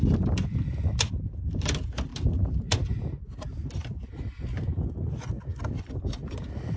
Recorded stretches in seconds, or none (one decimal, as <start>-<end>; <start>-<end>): 0.0-6.8